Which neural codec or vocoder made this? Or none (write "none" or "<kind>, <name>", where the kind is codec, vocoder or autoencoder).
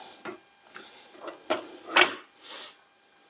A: none